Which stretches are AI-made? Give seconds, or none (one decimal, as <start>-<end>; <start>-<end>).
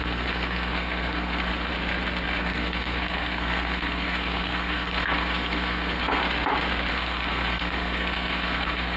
0.0-1.7; 2.4-6.2; 6.9-9.0